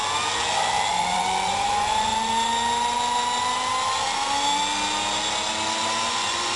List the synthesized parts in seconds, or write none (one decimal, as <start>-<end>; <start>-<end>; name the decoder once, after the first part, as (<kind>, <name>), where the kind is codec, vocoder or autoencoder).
0.9-2.1 (vocoder, Vocos); 6.1-6.6